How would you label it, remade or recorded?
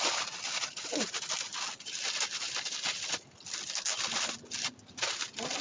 recorded